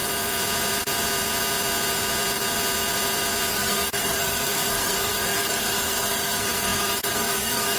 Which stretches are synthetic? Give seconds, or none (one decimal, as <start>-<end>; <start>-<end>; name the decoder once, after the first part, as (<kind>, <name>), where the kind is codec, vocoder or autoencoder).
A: 3.5-7.8 (codec, SNAC)